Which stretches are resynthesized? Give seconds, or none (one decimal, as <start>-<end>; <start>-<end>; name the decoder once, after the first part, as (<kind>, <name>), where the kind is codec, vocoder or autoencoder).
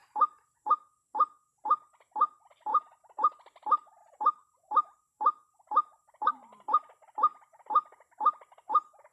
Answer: 0.0-0.7 (vocoder, BigVGAN v2); 2.7-3.4; 4.0-6.3